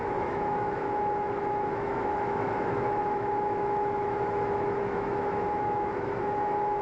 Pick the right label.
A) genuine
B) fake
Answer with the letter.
B